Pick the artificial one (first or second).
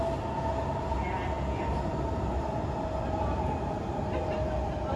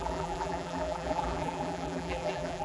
second